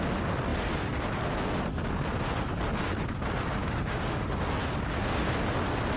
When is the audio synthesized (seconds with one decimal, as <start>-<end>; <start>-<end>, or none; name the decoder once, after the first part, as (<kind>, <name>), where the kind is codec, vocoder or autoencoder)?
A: 3.6-4.2 (codec, DAC)